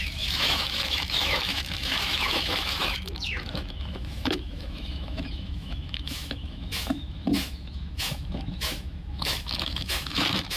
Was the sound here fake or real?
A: fake